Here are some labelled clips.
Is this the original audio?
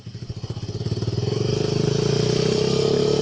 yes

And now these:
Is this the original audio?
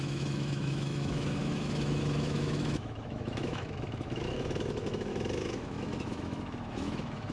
no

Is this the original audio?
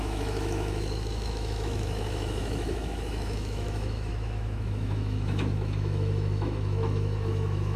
no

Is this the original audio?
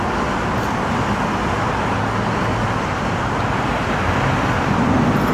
yes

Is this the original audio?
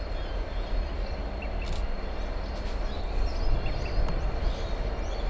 yes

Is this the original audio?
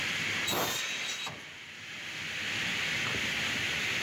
yes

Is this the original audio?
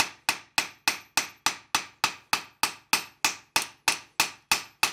yes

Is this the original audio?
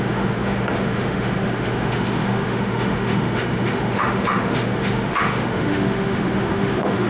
no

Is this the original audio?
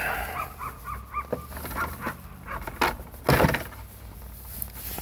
yes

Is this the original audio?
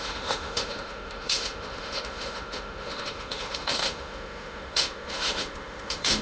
no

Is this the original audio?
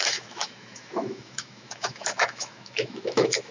no